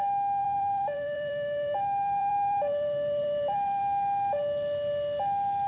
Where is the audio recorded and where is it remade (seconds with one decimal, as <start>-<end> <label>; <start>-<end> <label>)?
0.0-0.4 recorded; 0.4-3.8 remade; 3.8-5.7 recorded